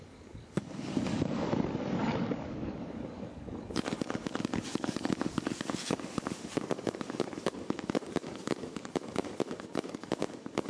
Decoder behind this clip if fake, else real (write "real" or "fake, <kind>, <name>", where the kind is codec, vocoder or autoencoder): fake, codec, DAC